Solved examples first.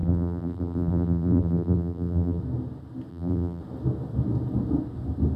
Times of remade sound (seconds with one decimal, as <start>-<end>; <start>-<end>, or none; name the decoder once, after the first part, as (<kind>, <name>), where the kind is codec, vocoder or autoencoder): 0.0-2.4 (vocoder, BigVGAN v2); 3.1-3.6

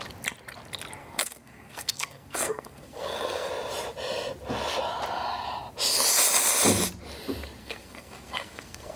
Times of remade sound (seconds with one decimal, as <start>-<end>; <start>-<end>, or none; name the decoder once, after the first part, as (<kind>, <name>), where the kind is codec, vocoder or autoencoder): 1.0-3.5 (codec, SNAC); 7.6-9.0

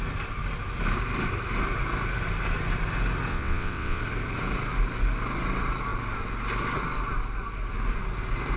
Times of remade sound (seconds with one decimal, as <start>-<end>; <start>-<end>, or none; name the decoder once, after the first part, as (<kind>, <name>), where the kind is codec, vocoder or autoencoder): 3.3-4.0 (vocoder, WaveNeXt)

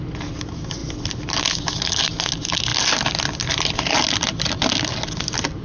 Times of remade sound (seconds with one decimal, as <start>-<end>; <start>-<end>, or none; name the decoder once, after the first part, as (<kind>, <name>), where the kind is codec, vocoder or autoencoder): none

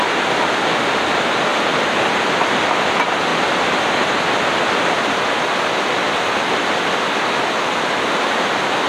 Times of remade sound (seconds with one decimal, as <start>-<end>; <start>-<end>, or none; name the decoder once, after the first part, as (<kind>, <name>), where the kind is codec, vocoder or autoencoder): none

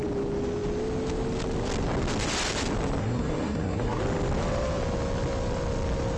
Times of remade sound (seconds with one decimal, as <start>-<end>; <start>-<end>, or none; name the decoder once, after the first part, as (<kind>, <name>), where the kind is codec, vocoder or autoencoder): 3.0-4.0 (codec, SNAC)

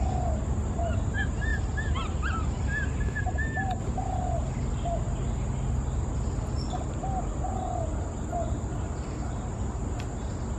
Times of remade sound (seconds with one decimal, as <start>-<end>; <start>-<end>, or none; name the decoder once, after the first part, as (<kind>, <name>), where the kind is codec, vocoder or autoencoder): 1.5-2.6 (vocoder, BigVGAN v2)

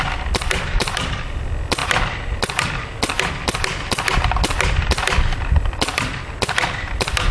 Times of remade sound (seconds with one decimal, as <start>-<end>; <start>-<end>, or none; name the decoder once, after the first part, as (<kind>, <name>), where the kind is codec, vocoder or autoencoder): 0.8-1.4 (vocoder, BigVGAN v2)